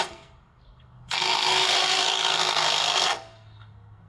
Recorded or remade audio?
remade